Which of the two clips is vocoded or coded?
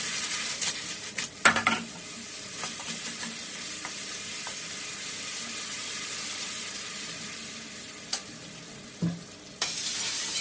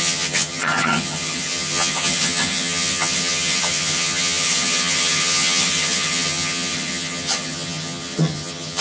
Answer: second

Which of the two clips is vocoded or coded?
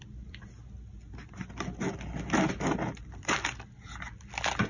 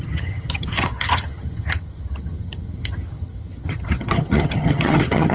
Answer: second